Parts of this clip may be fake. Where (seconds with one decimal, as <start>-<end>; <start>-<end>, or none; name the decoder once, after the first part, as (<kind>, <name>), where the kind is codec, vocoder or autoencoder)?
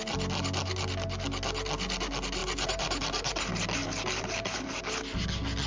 2.4-3.4 (vocoder, BigVGAN v2); 3.8-5.0